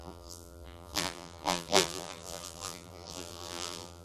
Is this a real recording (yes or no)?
no